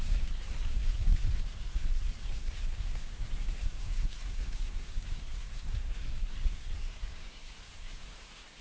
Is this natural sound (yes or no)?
no